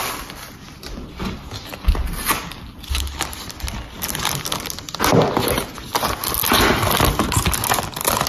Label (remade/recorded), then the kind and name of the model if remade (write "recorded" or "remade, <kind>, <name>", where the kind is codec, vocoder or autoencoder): recorded